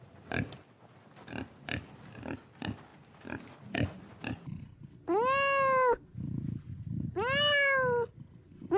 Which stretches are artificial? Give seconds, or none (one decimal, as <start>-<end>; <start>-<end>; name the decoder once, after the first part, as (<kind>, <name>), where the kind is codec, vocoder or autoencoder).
none